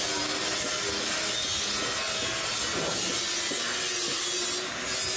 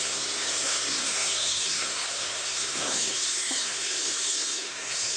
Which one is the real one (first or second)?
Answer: first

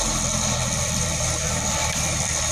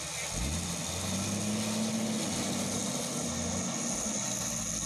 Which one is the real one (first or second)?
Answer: second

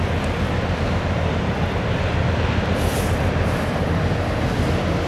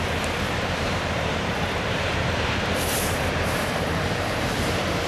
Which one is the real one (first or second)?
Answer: first